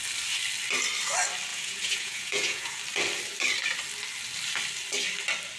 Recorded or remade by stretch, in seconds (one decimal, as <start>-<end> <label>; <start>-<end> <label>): 0.0-1.5 recorded; 1.5-2.8 remade; 2.8-5.6 recorded